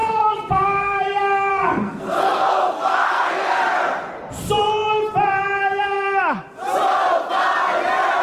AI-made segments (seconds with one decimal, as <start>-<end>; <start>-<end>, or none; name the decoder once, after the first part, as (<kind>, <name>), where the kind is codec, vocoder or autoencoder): 0.0-1.0 (codec, SNAC); 1.5-3.6